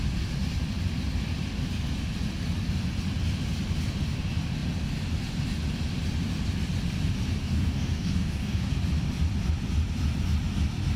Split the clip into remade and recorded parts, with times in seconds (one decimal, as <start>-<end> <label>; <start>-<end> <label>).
0.0-7.4 recorded; 7.4-8.7 remade; 8.7-11.0 recorded